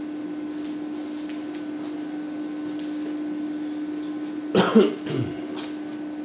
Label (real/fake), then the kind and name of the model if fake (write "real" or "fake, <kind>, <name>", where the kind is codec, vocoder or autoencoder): real